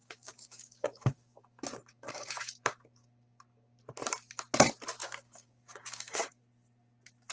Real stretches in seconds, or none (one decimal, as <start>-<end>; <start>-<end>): 3.8-5.0; 6.4-7.3